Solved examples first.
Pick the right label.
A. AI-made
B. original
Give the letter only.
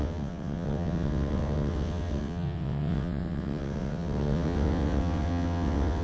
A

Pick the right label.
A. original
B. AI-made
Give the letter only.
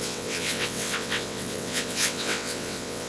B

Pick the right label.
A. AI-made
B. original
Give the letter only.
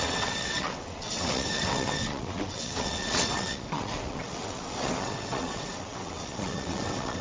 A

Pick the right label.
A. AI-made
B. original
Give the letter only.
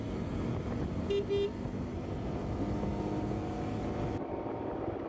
B